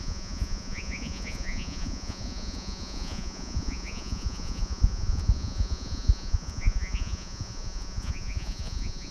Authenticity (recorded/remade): remade